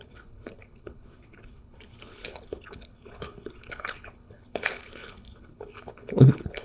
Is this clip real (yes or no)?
no